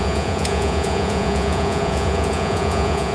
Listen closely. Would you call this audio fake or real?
fake